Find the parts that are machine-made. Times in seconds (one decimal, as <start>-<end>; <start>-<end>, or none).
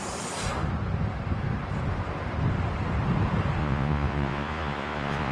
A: 3.6-5.3